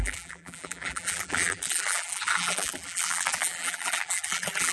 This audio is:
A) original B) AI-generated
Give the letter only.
B